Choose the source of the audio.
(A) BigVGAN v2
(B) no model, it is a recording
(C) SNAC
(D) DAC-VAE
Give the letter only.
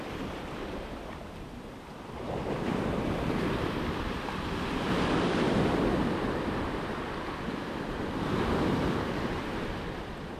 A